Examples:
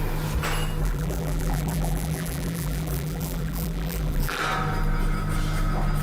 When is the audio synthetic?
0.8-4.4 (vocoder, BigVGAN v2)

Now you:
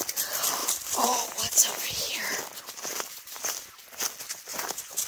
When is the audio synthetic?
0.6-3.7 (vocoder, BigVGAN v2)

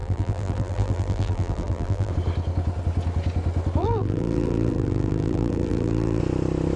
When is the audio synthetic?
0.0-2.1 (vocoder, BigVGAN v2); 3.8-6.2

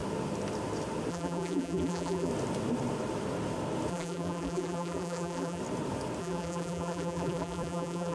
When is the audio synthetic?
1.1-2.3 (vocoder, BigVGAN v2); 3.9-5.6; 6.2-8.1

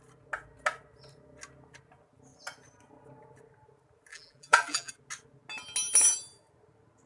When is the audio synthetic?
4.1-4.9 (vocoder, BigVGAN v2)

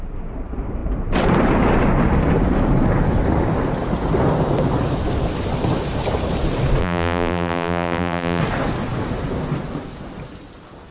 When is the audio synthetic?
6.8-8.4 (vocoder, BigVGAN v2)

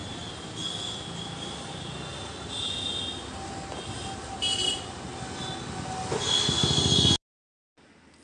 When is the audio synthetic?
none

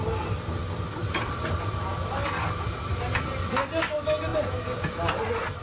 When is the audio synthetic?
1.0-1.7 (vocoder, BigVGAN v2)